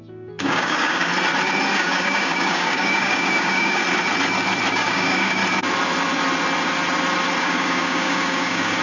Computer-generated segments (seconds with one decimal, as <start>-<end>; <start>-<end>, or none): 0.0-1.1; 1.7-3.8; 4.7-5.4; 7.4-8.8